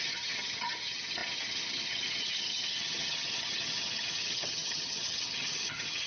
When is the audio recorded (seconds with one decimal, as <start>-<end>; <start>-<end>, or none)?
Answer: none